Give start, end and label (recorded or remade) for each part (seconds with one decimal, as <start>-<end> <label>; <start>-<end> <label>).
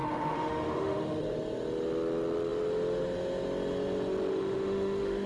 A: 0.0-1.2 remade; 1.2-4.3 recorded; 4.3-5.3 remade